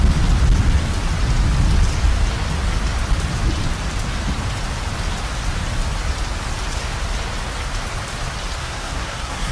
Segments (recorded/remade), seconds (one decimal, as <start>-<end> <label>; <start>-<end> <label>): 0.0-8.6 recorded; 8.6-9.5 remade